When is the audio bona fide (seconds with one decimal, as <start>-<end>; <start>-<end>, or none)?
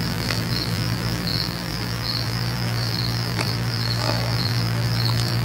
none